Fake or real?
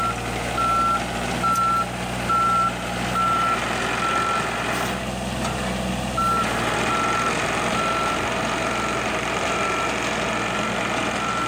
real